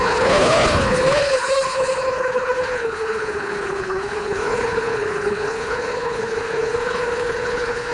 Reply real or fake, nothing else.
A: fake